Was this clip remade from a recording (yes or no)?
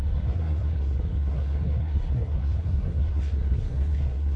yes